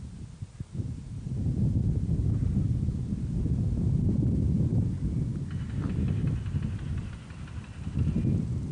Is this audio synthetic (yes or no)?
no